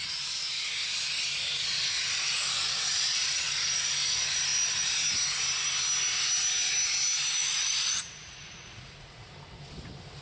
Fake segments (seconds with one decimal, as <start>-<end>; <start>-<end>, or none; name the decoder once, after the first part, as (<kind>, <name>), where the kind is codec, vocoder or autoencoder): 2.9-3.6 (vocoder, Vocos); 7.4-9.3